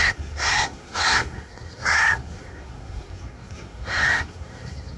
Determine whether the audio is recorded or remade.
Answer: remade